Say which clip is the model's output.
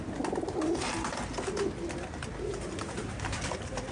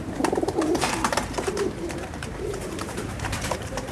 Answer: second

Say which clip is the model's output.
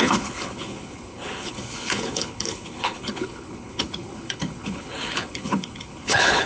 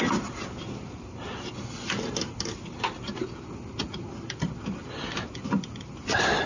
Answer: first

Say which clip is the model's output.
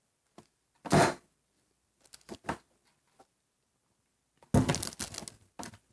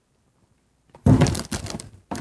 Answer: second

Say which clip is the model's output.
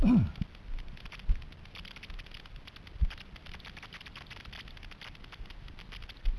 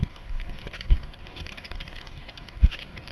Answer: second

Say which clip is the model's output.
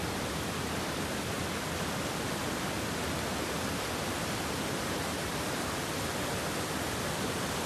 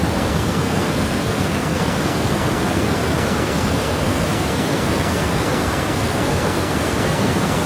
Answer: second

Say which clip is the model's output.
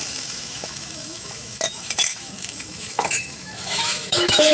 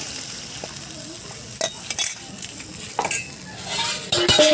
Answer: first